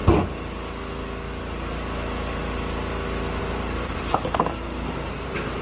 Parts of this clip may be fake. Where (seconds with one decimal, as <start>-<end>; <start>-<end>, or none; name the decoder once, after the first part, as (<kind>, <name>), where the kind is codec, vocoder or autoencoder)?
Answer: 3.4-5.6 (vocoder, BigVGAN v2)